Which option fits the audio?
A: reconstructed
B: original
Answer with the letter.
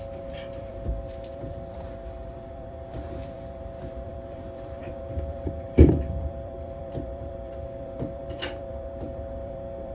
A